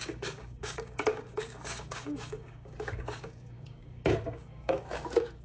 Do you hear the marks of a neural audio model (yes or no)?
yes